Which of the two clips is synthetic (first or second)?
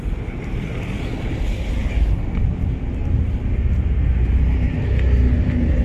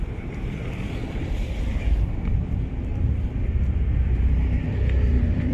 second